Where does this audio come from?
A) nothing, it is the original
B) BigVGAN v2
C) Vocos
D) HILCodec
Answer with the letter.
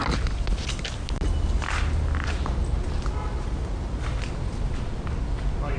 A